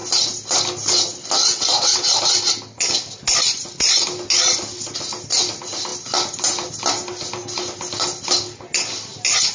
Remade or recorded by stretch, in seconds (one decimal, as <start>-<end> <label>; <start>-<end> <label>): 0.0-9.5 recorded